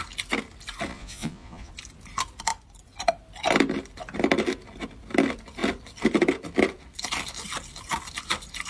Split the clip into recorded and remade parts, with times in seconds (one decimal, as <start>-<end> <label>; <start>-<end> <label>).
0.0-0.9 recorded; 0.9-1.7 remade; 1.7-8.7 recorded